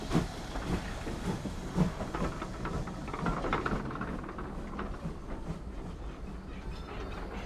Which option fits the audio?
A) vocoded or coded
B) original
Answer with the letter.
B